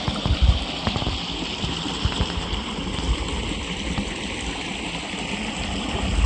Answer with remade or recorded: recorded